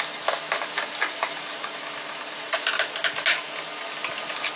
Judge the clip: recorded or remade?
recorded